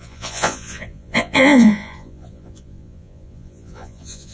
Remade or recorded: remade